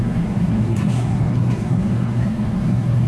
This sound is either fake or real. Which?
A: fake